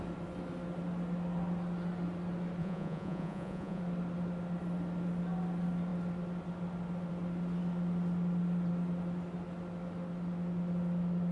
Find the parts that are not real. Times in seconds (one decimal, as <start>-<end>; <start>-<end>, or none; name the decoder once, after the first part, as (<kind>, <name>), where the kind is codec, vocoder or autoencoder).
2.6-3.8 (vocoder, Vocos)